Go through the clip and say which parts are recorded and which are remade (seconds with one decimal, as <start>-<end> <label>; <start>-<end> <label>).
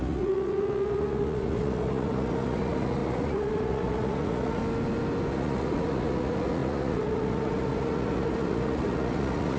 0.0-4.6 remade; 4.6-5.3 recorded; 5.3-9.6 remade